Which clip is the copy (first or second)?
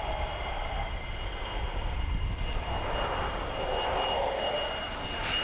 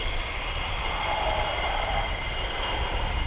second